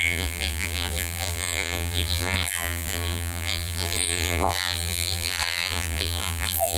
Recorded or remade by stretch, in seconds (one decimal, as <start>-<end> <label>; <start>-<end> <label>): 0.0-6.8 remade